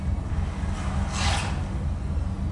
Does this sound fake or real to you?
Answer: real